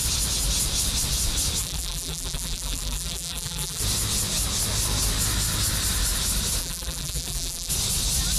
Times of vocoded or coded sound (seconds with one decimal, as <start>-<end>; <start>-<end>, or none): 1.6-3.8; 6.6-7.7